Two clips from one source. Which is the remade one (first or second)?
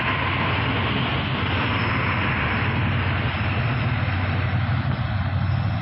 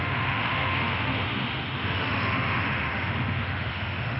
second